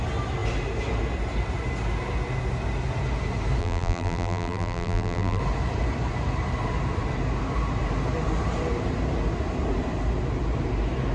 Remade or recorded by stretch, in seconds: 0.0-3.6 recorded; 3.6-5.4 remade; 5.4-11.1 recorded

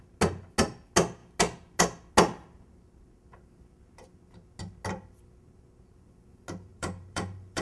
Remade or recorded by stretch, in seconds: 0.0-6.7 recorded; 6.7-7.6 remade

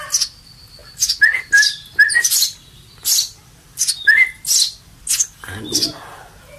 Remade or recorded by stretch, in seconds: 0.0-6.6 recorded

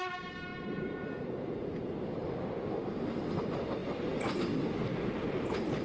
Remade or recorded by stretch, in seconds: 0.0-0.5 recorded; 0.5-1.3 remade; 1.3-3.8 recorded; 3.8-4.4 remade; 4.4-5.8 recorded

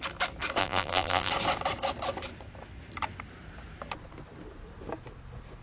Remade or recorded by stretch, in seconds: 0.0-0.6 recorded; 0.6-1.3 remade; 1.3-5.6 recorded